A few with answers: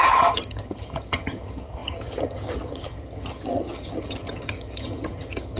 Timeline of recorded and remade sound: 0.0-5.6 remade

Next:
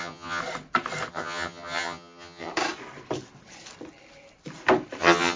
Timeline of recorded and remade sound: 0.0-0.4 remade; 0.4-1.1 recorded; 1.1-2.5 remade; 2.5-5.0 recorded; 5.0-5.4 remade

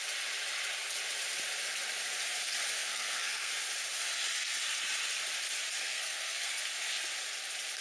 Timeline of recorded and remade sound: 0.0-2.8 recorded; 2.8-3.5 remade; 3.5-5.8 recorded; 5.8-6.5 remade; 6.5-7.8 recorded

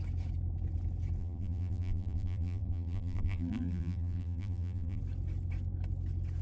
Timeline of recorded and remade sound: 0.0-1.2 recorded; 1.2-5.0 remade; 5.0-6.4 recorded

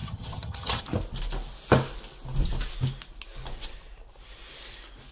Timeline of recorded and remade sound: 0.0-0.8 remade; 0.8-5.1 recorded

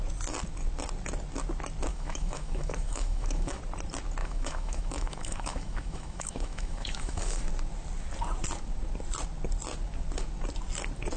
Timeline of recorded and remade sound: 0.0-1.9 recorded; 1.9-3.6 remade; 3.6-4.2 recorded; 4.2-7.4 remade; 7.4-11.2 recorded